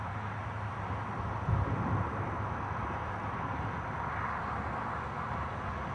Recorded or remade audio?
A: recorded